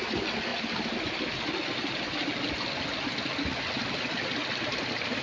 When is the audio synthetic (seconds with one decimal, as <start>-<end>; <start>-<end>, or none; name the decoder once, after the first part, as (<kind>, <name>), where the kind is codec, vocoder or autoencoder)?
none